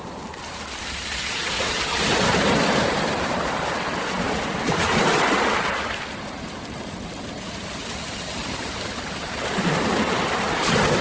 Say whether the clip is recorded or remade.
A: recorded